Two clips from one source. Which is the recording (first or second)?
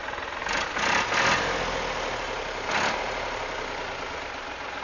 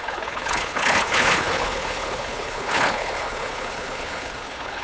first